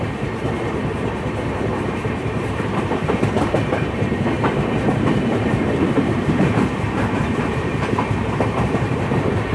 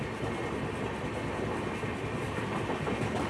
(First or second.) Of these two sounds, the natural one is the second